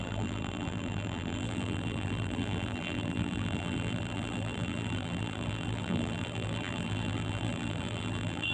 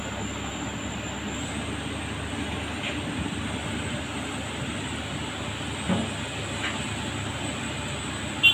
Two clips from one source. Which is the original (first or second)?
second